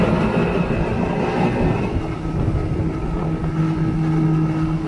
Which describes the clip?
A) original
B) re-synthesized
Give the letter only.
A